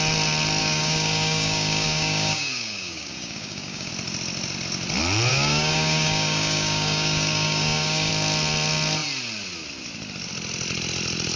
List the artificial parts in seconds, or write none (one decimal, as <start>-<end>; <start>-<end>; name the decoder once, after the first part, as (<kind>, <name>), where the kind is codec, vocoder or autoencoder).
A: 0.6-3.9 (codec, DAC); 5.3-8.1

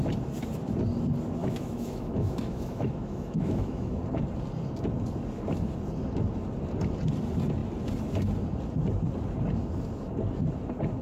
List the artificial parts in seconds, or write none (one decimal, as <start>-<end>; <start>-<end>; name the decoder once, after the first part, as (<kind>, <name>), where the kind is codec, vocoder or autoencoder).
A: 1.4-4.0 (autoencoder, DAC-VAE)

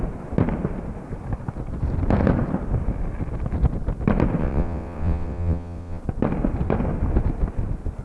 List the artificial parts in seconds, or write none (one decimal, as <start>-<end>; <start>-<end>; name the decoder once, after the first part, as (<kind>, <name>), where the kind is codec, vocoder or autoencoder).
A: 4.4-6.0 (vocoder, WaveNeXt)

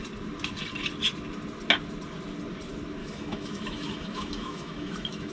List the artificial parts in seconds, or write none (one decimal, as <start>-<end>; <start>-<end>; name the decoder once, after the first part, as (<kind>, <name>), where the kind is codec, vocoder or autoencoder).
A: 3.0-5.3 (autoencoder, DAC-VAE)

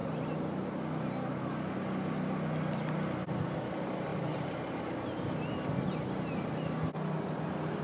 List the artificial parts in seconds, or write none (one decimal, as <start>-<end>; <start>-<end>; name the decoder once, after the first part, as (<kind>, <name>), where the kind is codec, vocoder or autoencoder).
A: 0.0-0.7 (vocoder, BigVGAN v2); 4.1-4.9

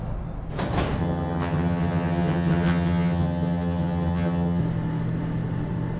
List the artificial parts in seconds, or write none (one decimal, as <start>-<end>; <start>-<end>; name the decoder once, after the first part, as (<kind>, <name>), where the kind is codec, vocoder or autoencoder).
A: 1.0-4.6 (vocoder, HiFi-GAN)

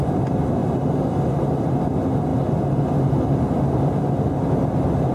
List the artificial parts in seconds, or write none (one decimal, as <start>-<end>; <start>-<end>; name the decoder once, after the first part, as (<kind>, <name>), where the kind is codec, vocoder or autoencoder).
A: 0.6-1.8 (vocoder, BigVGAN v2)

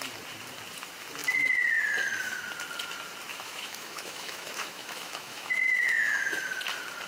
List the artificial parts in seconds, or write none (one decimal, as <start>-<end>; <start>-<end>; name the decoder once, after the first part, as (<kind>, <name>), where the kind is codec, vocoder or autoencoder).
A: 3.3-6.2 (autoencoder, DAC-VAE)